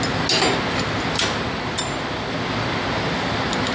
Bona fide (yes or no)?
yes